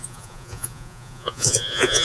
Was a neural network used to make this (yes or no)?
yes